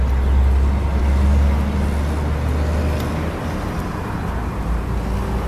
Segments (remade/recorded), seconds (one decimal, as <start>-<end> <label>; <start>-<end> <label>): 0.0-5.5 recorded